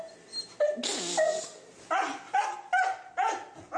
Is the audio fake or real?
real